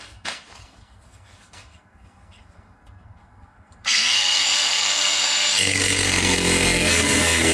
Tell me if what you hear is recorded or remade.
remade